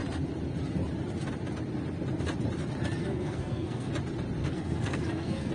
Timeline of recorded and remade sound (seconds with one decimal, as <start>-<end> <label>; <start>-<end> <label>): 0.0-3.0 recorded; 3.0-3.9 remade; 3.9-4.4 recorded; 4.4-5.5 remade